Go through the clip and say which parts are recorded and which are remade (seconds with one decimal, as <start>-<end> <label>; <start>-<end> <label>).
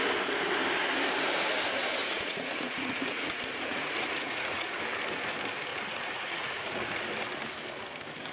0.0-2.0 recorded; 2.0-4.8 remade; 4.8-5.7 recorded; 5.7-7.0 remade; 7.0-8.3 recorded